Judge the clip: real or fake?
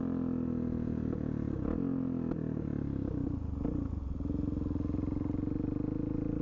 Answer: real